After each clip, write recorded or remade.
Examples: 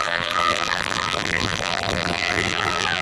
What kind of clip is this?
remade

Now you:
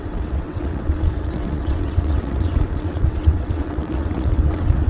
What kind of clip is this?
remade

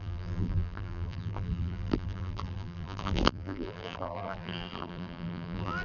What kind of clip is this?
remade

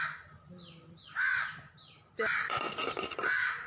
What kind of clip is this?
recorded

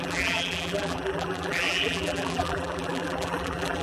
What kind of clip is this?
remade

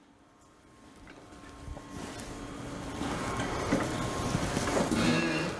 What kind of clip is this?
recorded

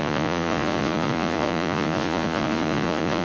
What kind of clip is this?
remade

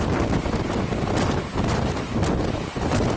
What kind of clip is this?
recorded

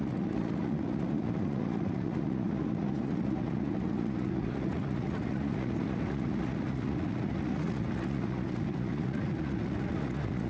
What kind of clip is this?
remade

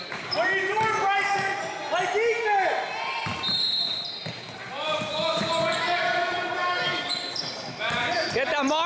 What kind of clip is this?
recorded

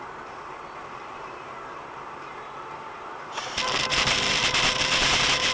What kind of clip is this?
remade